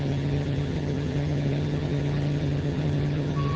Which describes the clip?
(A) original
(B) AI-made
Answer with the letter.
B